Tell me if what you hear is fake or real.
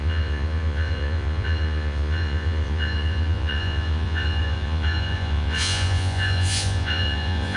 fake